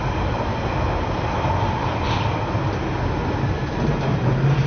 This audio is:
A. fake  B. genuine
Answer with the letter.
B